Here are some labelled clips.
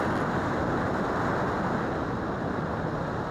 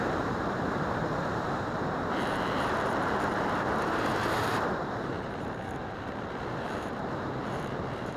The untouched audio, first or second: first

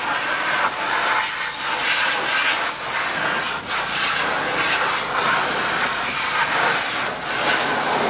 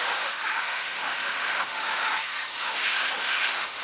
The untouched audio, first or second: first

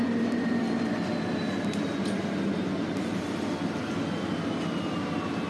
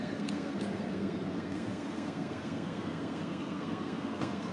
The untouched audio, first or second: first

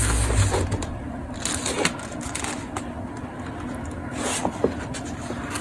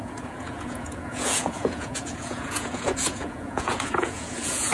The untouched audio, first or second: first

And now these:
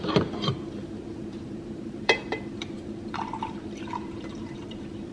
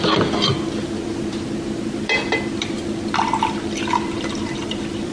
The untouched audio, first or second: second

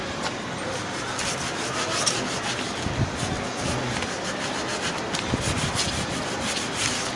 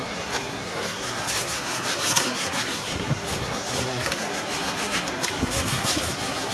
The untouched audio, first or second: first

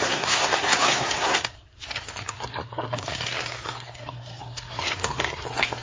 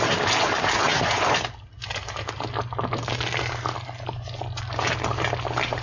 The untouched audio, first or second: second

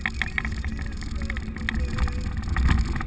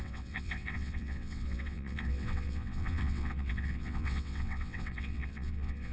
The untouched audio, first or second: first